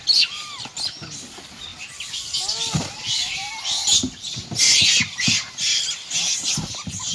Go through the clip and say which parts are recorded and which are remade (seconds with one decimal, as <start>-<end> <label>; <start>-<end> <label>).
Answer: 0.0-7.1 recorded